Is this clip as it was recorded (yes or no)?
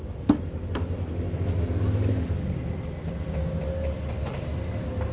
yes